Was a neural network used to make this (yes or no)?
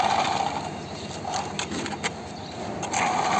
no